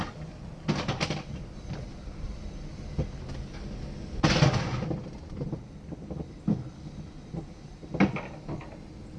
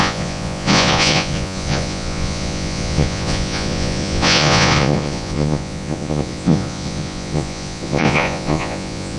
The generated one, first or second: second